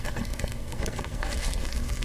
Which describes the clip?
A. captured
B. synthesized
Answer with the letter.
B